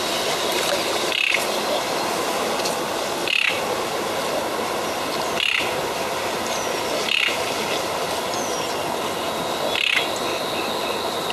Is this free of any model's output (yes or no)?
yes